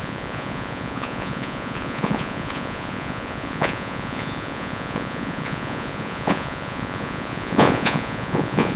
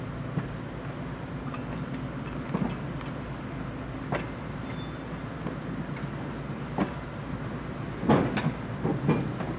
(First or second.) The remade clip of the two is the first